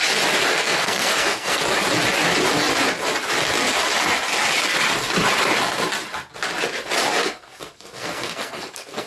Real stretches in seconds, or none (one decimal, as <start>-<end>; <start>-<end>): 0.0-0.5; 1.6-7.2